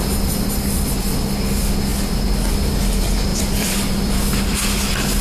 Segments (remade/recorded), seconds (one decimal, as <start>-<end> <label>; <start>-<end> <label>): 0.0-3.3 recorded; 3.3-4.3 remade; 4.3-5.2 recorded